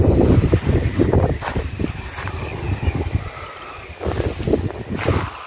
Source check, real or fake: real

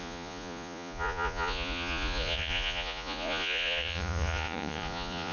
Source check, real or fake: fake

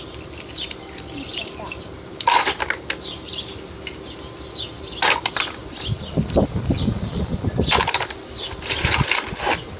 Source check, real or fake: real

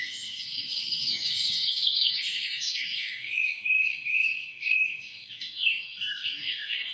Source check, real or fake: fake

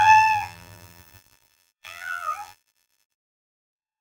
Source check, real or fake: fake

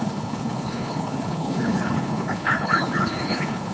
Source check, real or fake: fake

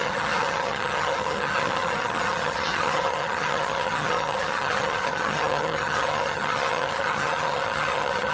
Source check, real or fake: fake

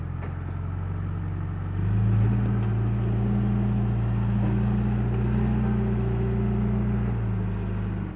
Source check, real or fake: real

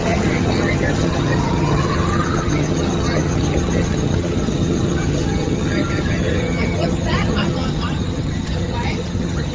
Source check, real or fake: fake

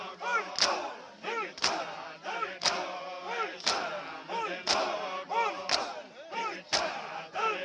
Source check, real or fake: real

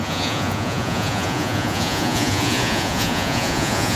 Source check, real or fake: fake